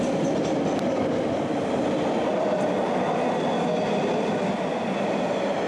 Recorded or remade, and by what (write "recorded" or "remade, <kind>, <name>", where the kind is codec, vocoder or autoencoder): recorded